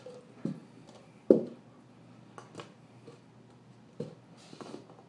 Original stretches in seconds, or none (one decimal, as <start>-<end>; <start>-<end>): 0.0-5.1